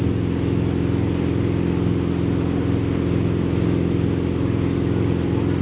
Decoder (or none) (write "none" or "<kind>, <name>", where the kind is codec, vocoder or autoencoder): none